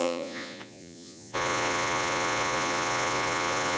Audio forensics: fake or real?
fake